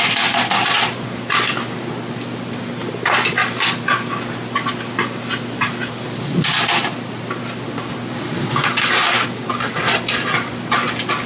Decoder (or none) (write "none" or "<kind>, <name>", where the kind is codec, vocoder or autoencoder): none